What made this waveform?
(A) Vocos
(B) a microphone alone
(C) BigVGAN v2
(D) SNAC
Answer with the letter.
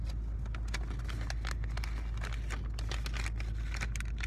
B